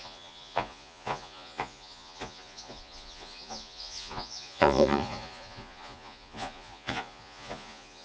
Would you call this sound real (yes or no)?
no